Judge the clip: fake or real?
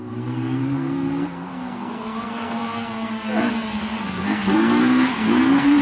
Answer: fake